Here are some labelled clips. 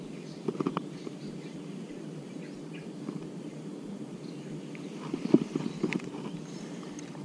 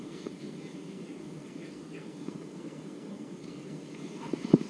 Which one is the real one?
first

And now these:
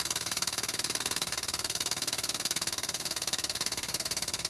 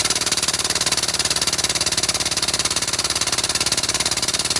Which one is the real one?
second